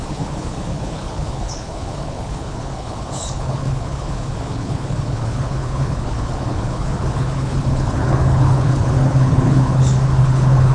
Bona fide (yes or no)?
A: no